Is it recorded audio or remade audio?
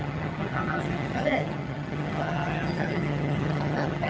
remade